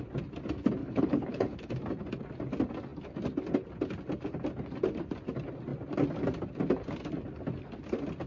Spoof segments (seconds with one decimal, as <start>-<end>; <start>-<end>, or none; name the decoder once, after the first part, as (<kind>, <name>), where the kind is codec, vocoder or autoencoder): 0.8-1.7 (codec, HILCodec)